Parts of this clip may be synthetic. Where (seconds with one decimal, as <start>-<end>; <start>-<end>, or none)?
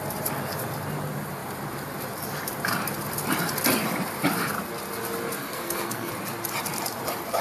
5.4-6.1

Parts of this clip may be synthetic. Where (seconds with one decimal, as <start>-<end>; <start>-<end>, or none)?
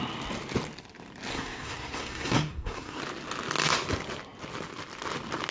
1.3-3.0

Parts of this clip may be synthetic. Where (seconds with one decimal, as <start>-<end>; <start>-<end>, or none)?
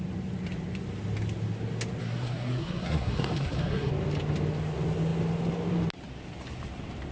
2.0-3.9